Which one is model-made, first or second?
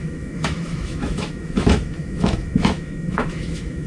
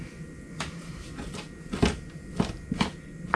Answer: first